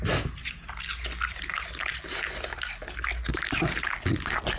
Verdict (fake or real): real